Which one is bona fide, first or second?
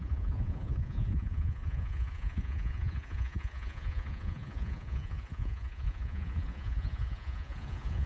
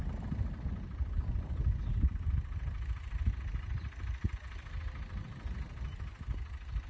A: second